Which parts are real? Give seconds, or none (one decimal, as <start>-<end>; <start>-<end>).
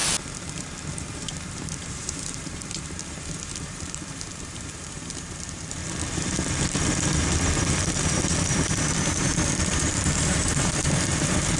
0.0-0.9; 5.8-7.7